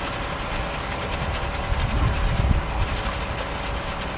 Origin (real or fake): real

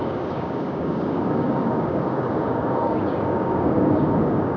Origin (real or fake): fake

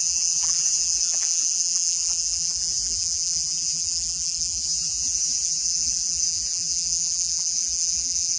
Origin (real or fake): fake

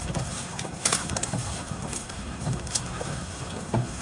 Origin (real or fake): fake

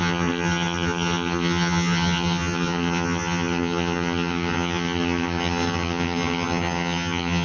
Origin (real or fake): fake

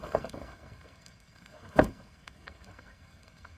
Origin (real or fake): fake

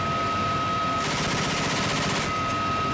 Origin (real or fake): real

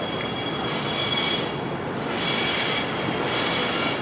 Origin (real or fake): real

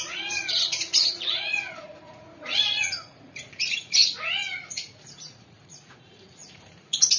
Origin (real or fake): fake